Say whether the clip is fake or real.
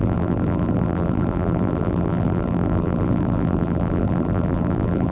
fake